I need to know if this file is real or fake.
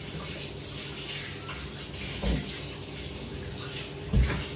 real